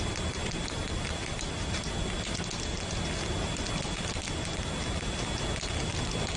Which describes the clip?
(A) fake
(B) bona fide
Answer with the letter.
B